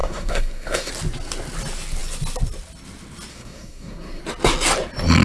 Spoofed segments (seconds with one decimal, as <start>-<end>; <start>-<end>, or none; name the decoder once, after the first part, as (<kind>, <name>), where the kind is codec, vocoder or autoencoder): 0.0-0.9 (codec, SNAC); 3.3-4.2